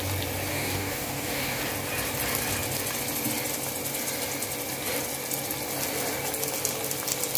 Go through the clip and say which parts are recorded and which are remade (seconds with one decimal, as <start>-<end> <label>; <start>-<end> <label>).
0.0-0.5 recorded; 0.5-1.6 remade; 1.6-7.4 recorded